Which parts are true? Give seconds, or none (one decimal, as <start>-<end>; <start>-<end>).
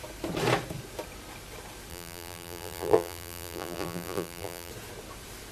0.0-1.9; 4.7-5.5